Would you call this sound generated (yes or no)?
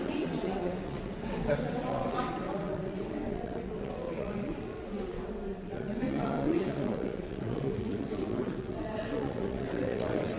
yes